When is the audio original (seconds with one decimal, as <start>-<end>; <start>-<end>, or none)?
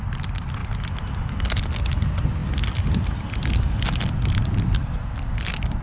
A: 0.0-5.8